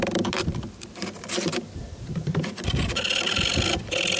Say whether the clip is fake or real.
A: real